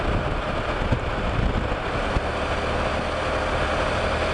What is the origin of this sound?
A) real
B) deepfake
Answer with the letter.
A